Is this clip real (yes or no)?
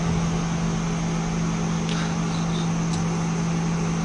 yes